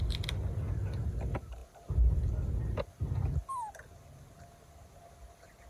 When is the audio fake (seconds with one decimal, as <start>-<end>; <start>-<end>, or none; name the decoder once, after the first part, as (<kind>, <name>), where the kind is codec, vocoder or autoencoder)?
none